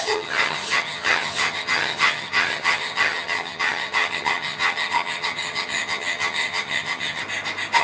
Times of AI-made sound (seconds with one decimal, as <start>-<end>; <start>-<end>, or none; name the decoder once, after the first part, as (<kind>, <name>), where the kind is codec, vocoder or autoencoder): 0.0-7.2 (vocoder, HiFi-GAN)